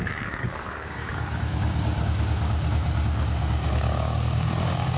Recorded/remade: remade